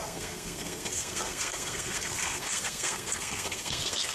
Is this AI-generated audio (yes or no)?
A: yes